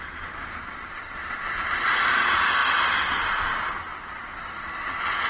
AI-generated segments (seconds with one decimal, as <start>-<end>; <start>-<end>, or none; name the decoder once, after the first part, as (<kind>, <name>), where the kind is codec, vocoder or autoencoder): 1.2-1.8 (vocoder, BigVGAN v2); 3.9-5.3